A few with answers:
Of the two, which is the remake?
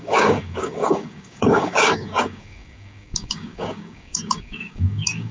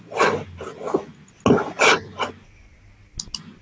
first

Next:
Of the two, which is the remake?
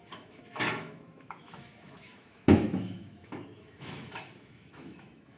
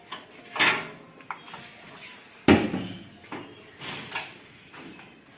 first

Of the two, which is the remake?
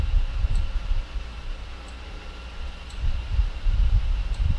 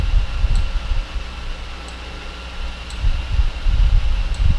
first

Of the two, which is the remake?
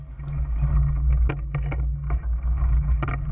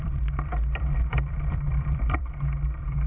second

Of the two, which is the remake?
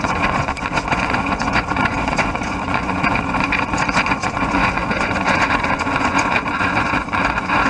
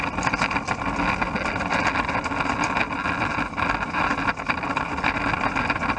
first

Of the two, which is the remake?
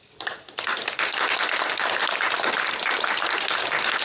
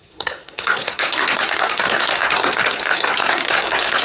second